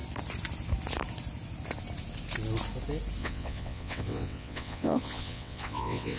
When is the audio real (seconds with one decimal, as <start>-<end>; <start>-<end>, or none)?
0.0-3.2